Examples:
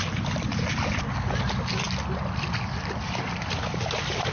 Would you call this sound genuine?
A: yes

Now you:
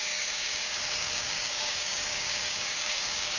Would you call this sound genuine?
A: no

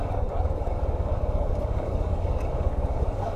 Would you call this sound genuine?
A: no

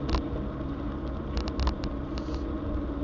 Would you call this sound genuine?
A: yes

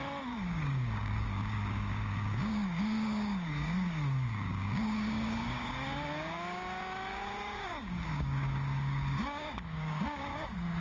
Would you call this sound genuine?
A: no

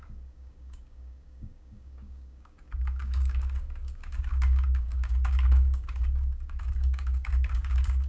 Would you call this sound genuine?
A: no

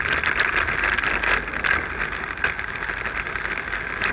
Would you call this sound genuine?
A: yes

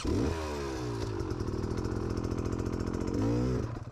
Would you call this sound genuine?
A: yes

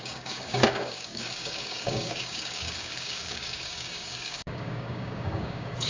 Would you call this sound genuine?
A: no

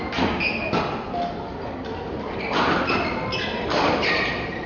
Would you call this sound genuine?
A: yes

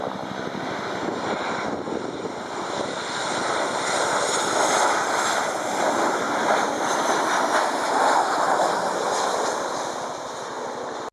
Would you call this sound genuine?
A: yes